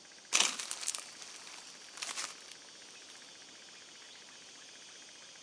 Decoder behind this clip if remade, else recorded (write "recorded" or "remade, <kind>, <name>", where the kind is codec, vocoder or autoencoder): recorded